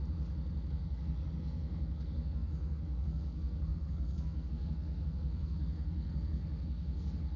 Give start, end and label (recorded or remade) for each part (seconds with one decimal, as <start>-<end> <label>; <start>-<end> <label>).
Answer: 0.0-0.7 recorded; 0.7-7.4 remade